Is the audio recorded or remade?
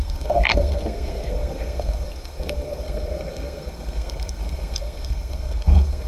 remade